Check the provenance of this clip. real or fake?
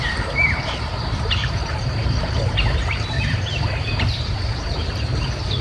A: fake